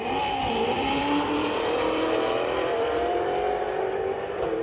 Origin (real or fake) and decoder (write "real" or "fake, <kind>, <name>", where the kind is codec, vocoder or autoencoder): fake, vocoder, BigVGAN v2